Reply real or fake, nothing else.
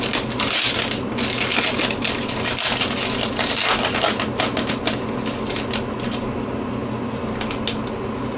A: real